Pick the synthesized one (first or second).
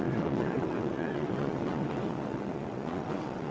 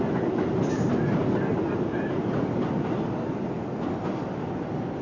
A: first